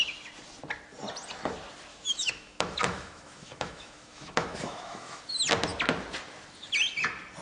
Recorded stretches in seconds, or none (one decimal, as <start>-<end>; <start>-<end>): 0.0-1.9; 5.2-7.4